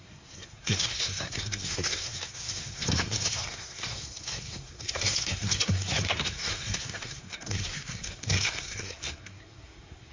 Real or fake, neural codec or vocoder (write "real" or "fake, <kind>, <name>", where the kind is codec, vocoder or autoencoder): fake, codec, SNAC